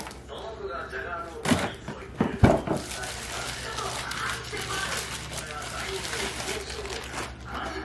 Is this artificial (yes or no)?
no